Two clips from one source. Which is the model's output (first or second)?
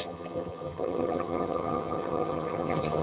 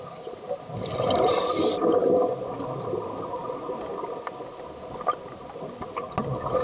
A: first